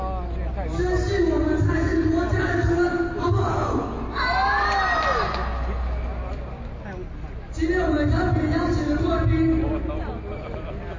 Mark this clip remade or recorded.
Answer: recorded